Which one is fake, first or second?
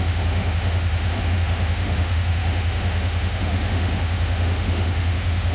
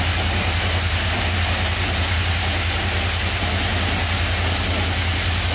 first